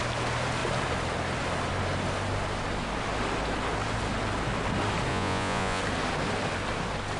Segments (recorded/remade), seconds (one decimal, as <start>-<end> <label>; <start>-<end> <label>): 0.0-5.1 recorded; 5.1-5.8 remade; 5.8-7.2 recorded